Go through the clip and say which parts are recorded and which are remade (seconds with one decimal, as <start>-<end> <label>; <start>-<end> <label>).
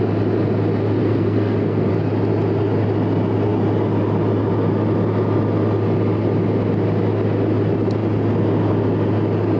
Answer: 0.0-1.0 recorded; 1.0-1.9 remade; 1.9-9.6 recorded